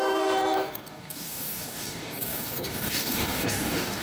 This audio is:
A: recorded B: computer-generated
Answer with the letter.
B